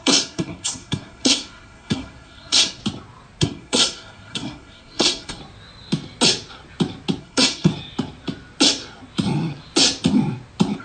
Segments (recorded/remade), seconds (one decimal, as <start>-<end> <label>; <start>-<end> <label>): 0.0-2.8 remade; 2.8-3.4 recorded; 3.4-5.4 remade; 5.4-7.2 recorded; 7.2-7.7 remade; 7.7-10.8 recorded